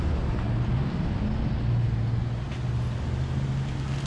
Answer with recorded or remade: recorded